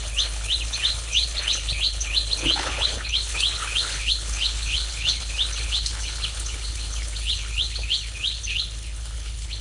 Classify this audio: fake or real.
fake